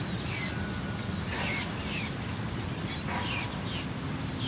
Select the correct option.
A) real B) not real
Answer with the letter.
A